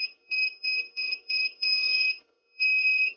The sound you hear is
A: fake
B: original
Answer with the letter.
A